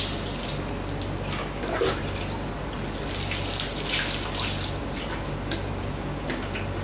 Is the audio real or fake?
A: real